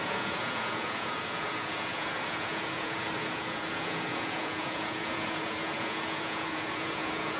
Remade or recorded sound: remade